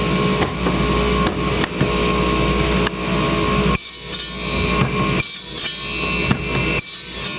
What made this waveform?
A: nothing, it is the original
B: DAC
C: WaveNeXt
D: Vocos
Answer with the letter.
A